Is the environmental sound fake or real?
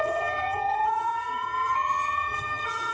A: fake